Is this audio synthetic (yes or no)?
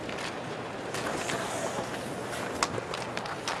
no